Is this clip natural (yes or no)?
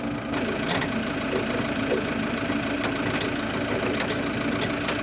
yes